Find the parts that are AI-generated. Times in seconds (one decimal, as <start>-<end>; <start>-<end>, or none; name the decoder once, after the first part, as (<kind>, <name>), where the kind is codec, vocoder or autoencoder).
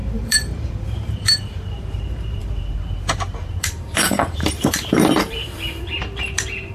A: 0.0-6.7 (vocoder, BigVGAN v2)